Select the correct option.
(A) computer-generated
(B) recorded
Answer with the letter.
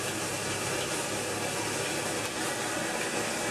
B